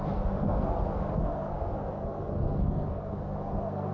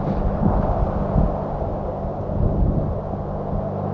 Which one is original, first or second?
second